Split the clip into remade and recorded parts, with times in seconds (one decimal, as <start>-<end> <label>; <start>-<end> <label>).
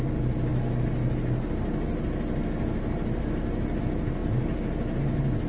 0.0-5.5 recorded